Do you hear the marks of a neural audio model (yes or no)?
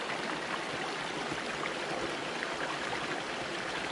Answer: no